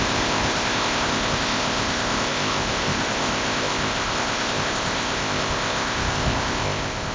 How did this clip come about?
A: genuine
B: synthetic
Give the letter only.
B